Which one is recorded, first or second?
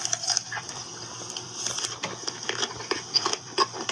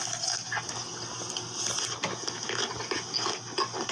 second